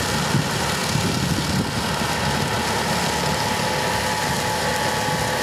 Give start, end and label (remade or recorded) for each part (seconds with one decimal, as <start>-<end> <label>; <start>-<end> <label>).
0.0-5.4 recorded